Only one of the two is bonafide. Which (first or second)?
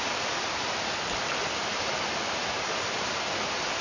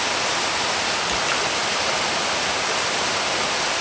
second